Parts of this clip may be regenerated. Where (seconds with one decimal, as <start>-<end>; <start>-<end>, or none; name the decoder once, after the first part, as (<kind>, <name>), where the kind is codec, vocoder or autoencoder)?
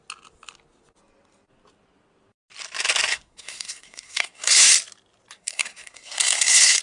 3.1-4.7 (codec, SNAC); 5.4-6.8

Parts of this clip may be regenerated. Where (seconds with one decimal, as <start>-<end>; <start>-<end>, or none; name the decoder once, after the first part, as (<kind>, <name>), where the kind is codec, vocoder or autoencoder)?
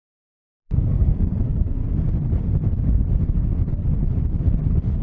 0.0-1.8 (codec, SNAC)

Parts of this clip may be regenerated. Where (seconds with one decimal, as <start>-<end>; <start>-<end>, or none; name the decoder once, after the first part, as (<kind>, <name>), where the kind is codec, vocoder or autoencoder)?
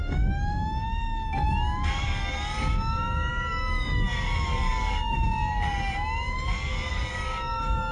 0.0-7.9 (codec, DAC)